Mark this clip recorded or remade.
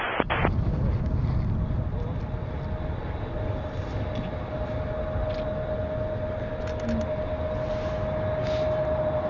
recorded